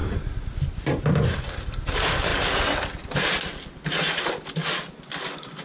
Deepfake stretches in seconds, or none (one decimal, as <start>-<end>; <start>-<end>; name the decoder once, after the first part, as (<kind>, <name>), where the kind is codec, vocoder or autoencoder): 1.4-2.3 (vocoder, BigVGAN v2); 5.1-5.6